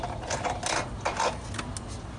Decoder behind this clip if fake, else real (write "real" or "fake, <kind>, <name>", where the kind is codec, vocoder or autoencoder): real